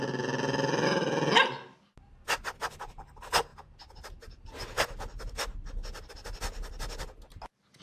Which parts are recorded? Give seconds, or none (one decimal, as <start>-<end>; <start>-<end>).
0.0-7.8